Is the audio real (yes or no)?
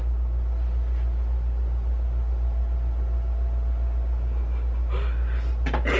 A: yes